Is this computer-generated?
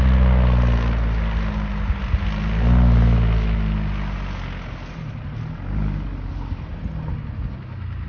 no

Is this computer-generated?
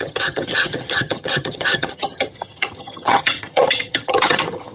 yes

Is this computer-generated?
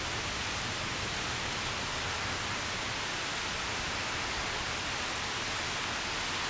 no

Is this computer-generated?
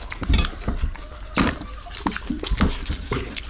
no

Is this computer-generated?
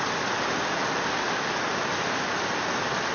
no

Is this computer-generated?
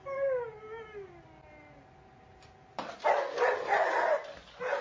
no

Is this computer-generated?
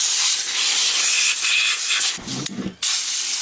no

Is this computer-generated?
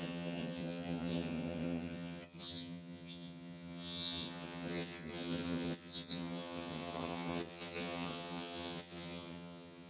yes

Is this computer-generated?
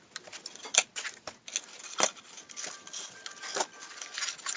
no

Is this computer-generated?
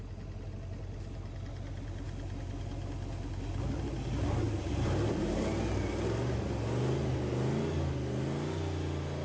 no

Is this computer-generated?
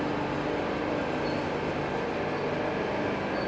no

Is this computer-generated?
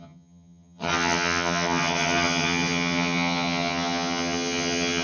yes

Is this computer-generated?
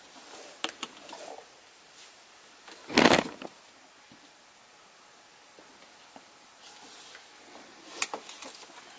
no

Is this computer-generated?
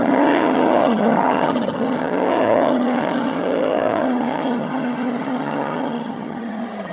yes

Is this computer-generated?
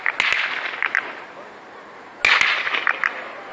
no